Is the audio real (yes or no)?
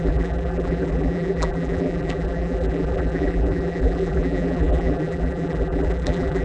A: no